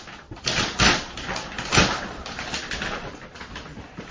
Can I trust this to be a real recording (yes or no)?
yes